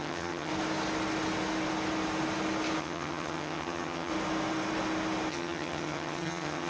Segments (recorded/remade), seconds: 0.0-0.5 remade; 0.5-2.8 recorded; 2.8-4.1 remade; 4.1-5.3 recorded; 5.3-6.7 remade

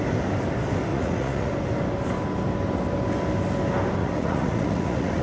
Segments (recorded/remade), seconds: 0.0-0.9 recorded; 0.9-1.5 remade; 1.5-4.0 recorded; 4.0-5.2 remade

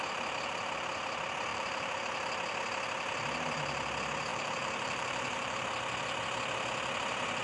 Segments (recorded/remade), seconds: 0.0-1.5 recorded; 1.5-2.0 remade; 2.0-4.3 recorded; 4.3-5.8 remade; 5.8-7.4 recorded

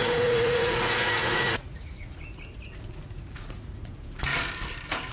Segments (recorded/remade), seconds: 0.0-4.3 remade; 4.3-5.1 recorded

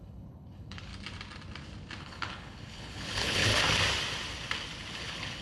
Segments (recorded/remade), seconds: 0.0-0.9 remade; 0.9-2.0 recorded; 2.0-3.5 remade; 3.5-4.9 recorded; 4.9-5.4 remade